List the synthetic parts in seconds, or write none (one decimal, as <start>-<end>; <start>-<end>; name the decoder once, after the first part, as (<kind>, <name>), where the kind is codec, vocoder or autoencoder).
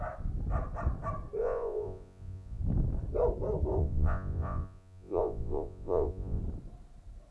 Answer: 1.4-2.6 (vocoder, Vocos); 3.8-6.4